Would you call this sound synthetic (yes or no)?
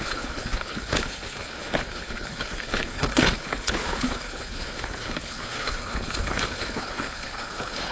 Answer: yes